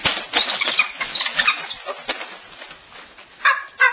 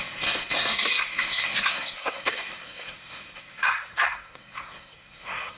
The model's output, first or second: second